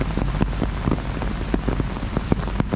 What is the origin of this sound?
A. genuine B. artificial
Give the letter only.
A